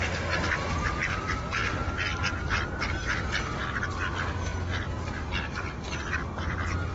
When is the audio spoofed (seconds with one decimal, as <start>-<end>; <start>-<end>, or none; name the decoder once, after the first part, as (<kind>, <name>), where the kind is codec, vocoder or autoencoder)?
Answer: none